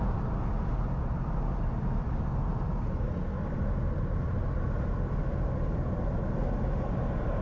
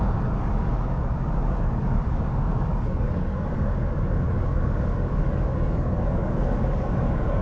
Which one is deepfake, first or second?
second